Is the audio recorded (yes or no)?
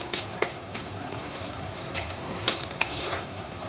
no